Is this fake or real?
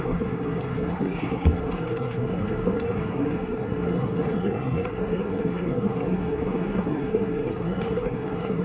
fake